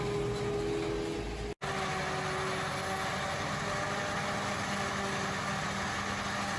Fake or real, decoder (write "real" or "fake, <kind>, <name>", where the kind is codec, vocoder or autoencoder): real